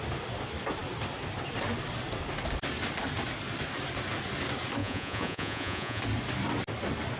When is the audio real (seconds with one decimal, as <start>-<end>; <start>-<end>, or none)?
0.0-4.8; 6.0-7.2